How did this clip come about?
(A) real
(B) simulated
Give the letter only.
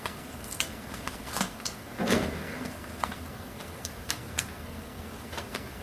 B